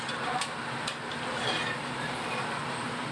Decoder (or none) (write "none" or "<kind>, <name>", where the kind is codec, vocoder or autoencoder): vocoder, BigVGAN v2